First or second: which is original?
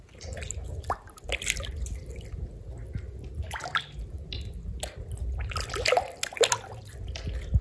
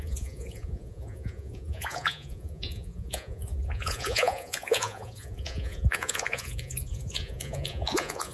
first